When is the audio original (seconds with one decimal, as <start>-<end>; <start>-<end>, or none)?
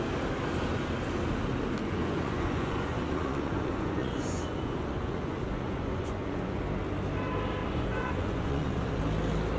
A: 0.0-1.8; 6.6-7.6; 9.0-9.6